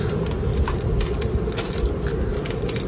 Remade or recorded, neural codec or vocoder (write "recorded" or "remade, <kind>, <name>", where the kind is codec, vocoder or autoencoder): recorded